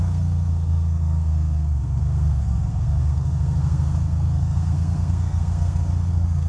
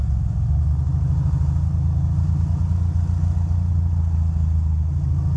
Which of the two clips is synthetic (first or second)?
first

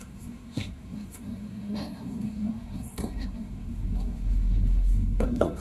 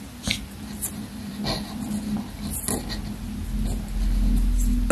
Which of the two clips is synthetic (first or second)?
first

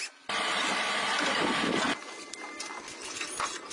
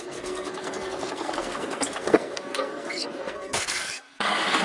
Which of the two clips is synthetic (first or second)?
second